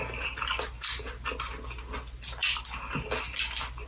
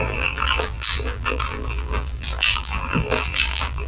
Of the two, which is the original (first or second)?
first